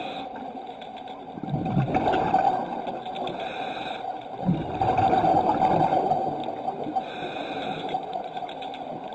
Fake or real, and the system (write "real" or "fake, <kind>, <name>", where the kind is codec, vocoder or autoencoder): real